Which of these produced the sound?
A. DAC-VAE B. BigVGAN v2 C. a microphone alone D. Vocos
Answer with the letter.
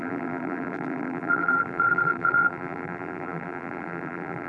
B